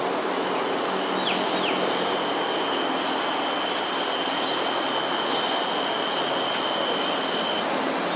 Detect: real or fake real